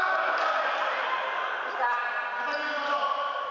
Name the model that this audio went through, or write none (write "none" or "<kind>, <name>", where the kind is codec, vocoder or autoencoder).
none